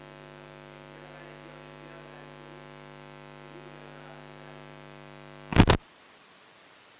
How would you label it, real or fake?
real